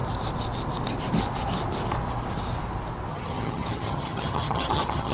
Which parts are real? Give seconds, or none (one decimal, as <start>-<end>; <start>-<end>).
0.0-3.1